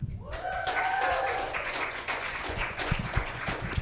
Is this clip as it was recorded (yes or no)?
no